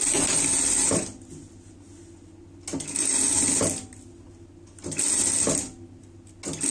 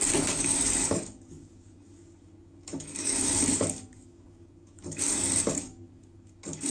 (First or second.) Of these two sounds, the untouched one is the first